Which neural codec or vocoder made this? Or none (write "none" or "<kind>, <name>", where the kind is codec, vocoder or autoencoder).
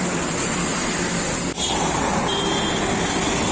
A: none